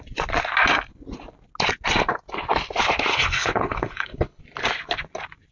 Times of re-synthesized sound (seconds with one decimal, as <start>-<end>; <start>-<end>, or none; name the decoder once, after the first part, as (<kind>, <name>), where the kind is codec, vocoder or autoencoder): 3.1-4.4 (codec, HILCodec)